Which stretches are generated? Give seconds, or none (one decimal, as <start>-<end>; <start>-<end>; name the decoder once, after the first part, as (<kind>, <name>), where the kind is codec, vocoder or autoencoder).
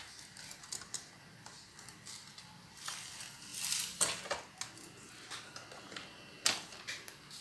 none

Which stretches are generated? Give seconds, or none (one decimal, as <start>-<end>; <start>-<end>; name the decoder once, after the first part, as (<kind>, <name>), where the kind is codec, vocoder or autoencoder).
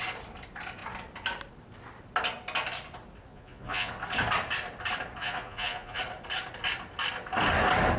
3.3-3.9 (vocoder, Vocos); 5.2-6.0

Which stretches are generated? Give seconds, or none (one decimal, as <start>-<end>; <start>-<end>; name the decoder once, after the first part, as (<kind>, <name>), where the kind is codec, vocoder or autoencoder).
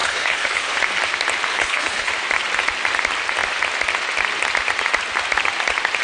0.0-0.8 (codec, HILCodec); 1.5-2.1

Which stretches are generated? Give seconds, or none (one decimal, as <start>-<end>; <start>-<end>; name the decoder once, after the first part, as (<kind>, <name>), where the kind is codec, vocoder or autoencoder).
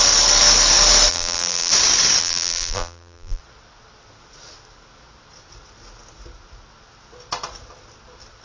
1.1-1.7 (vocoder, BigVGAN v2); 2.2-3.4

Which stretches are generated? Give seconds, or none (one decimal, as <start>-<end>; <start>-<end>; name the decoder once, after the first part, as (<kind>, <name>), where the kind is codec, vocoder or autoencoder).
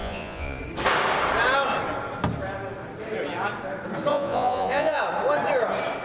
0.0-0.6 (vocoder, Vocos); 4.1-5.0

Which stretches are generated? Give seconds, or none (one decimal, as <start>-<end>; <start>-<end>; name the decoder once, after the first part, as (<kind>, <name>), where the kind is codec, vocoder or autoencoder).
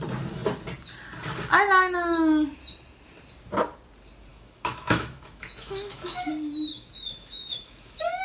4.3-6.3 (autoencoder, DAC-VAE); 6.7-8.2